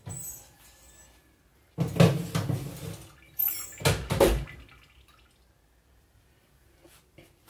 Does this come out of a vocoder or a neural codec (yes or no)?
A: no